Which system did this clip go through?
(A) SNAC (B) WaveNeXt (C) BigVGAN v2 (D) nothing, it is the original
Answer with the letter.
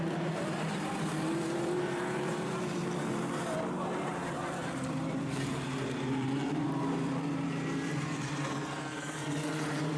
C